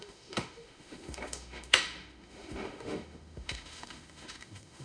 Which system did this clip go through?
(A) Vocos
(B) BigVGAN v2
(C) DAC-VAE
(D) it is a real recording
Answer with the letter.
C